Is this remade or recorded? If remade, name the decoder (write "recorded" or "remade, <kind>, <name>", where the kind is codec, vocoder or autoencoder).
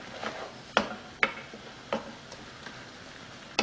recorded